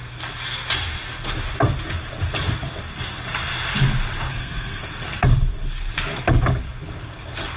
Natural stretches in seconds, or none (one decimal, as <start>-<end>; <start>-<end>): 0.0-4.3; 4.8-7.6